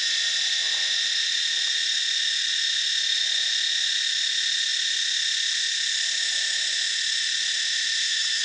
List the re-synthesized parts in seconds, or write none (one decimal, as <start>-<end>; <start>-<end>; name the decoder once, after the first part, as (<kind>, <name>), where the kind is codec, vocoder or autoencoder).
none